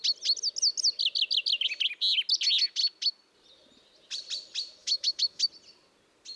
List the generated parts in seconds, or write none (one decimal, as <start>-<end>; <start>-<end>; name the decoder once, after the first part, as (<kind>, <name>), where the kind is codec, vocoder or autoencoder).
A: 4.8-5.4 (autoencoder, DAC-VAE)